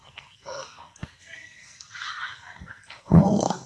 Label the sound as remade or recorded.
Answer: remade